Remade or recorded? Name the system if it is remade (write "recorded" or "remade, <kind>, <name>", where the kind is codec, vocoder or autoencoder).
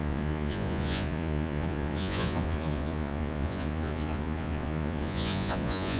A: remade, vocoder, Vocos